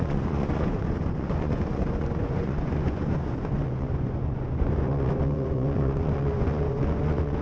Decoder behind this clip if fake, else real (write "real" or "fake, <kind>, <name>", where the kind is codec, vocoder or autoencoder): fake, vocoder, Vocos